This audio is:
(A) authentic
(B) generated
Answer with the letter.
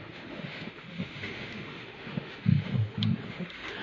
B